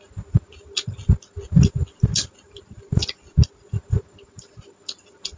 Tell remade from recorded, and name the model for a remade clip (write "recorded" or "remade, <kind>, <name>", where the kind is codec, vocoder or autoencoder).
recorded